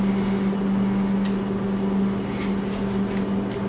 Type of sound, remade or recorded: recorded